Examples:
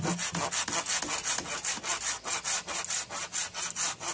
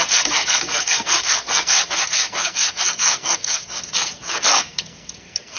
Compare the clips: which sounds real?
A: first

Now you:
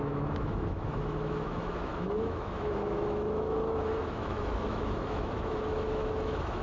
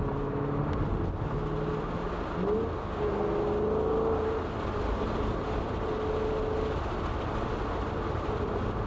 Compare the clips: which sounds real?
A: second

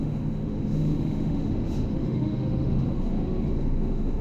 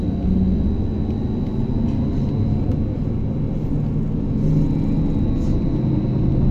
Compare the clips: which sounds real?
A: second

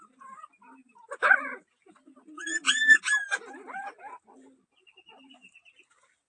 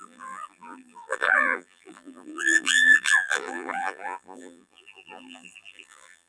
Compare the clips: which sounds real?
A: first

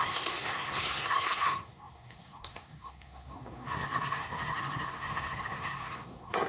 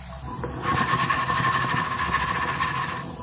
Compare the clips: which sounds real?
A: second